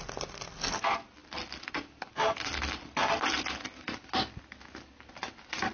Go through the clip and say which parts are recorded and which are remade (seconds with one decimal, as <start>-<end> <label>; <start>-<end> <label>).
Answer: 0.0-5.7 recorded